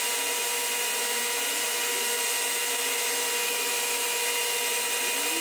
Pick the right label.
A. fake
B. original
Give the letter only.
B